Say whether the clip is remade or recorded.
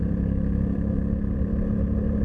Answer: remade